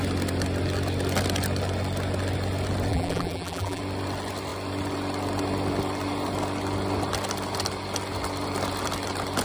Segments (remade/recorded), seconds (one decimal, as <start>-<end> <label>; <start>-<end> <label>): 0.0-2.9 recorded; 2.9-3.8 remade; 3.8-9.4 recorded